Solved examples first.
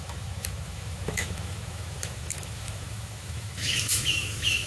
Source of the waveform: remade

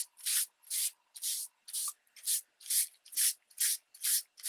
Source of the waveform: recorded